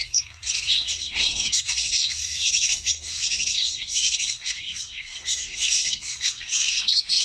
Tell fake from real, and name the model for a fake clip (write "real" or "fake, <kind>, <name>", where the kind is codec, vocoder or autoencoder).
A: fake, codec, SNAC